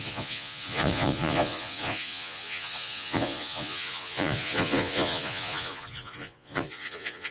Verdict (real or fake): fake